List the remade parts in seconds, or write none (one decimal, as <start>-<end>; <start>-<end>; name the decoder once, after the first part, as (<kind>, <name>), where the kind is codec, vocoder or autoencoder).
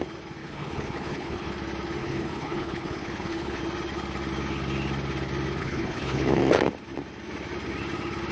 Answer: 0.4-1.5 (codec, HILCodec); 2.0-3.6; 5.6-6.4